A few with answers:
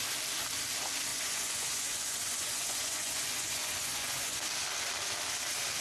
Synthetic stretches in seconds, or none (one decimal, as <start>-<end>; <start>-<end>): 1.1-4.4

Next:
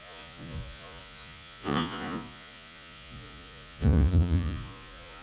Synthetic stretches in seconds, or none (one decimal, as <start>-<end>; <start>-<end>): 0.0-5.2

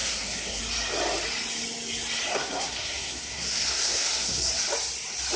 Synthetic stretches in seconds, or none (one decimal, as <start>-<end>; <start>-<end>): 0.0-0.6; 2.3-4.5

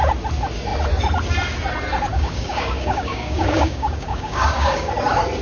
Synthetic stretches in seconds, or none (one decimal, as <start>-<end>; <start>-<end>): 2.1-4.9

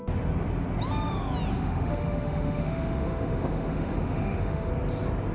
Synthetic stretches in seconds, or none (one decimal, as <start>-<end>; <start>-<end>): 1.5-4.7

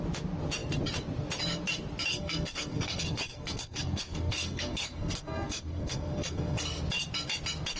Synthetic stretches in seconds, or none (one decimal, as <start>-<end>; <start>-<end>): 2.1-6.8

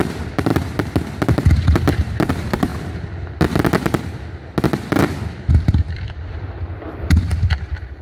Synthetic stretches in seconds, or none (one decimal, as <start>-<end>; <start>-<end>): 0.0-0.5; 2.3-2.7; 5.5-8.0